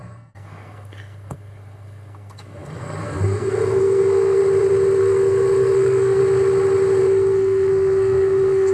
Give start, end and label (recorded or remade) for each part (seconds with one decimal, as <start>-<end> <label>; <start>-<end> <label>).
0.0-4.4 remade; 4.4-5.0 recorded; 5.0-6.2 remade; 6.2-7.0 recorded; 7.0-8.7 remade